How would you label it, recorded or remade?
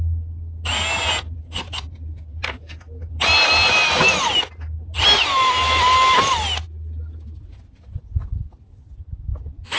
recorded